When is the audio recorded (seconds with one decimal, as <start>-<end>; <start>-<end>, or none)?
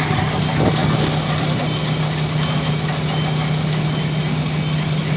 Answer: 0.0-5.2